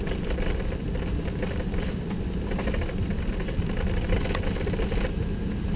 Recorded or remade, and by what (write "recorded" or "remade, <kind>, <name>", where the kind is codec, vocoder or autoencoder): recorded